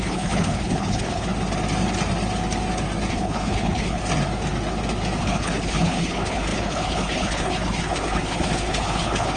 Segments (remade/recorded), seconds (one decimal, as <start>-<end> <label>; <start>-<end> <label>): 0.0-1.3 remade; 1.3-3.1 recorded; 3.1-4.0 remade; 4.0-5.2 recorded; 5.2-9.4 remade